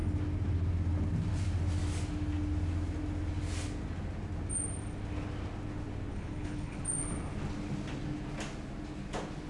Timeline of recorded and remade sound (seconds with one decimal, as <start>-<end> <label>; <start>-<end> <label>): 0.0-6.1 recorded; 6.1-6.8 remade; 6.8-9.5 recorded